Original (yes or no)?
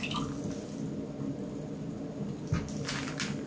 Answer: yes